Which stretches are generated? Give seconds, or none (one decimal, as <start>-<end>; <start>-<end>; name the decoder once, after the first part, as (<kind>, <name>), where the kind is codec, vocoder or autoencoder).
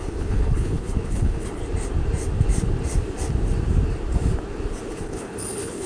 0.0-1.6 (codec, HILCodec); 5.0-5.9